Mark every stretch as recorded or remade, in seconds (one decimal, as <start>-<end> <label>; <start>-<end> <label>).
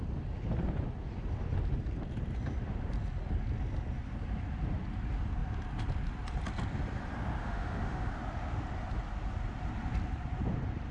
0.0-7.4 recorded; 7.4-8.1 remade; 8.1-10.9 recorded